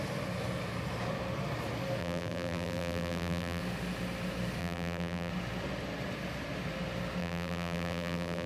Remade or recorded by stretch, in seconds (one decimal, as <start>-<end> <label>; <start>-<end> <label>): 0.0-2.0 recorded; 2.0-3.6 remade; 3.6-4.6 recorded; 4.6-5.3 remade; 5.3-7.2 recorded; 7.2-8.5 remade